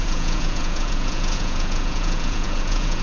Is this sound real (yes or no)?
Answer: no